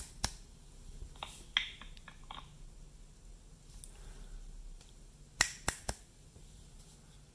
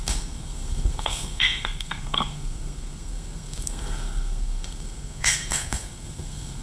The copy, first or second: second